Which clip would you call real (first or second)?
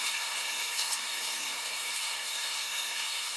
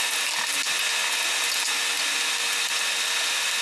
second